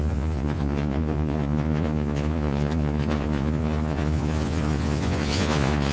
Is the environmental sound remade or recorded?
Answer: remade